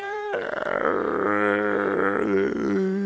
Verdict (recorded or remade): remade